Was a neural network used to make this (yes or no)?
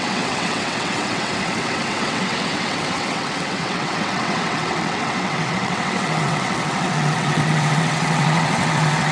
yes